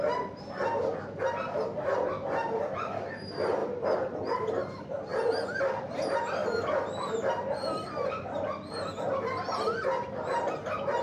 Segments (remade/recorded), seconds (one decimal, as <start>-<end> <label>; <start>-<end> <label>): 0.0-5.1 recorded; 5.1-5.9 remade; 5.9-6.4 recorded; 6.4-7.1 remade; 7.1-11.0 recorded